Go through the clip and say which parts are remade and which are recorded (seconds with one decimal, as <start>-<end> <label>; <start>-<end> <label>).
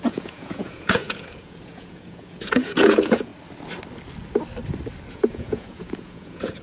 0.0-3.3 remade; 3.3-5.1 recorded; 5.1-6.6 remade